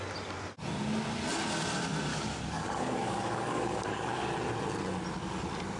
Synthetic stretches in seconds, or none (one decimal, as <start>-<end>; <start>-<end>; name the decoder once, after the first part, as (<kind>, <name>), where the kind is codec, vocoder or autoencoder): 2.1-4.3 (codec, DAC)